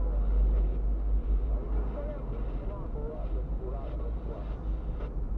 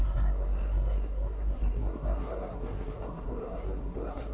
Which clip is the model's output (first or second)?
second